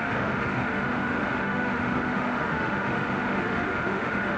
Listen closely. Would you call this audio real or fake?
fake